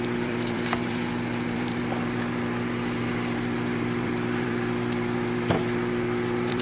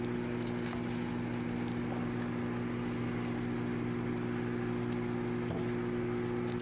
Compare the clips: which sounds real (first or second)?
second